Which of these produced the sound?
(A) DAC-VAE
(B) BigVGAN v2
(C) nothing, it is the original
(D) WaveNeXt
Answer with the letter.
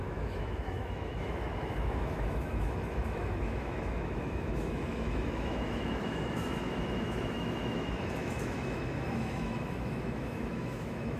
A